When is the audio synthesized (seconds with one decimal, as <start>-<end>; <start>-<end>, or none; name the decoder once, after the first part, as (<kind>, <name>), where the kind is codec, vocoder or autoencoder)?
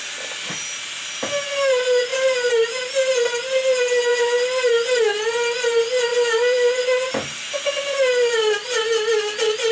2.1-2.9 (vocoder, BigVGAN v2); 4.1-5.0; 6.1-6.7